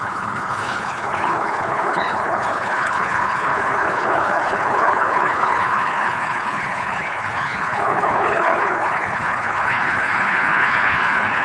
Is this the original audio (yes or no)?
no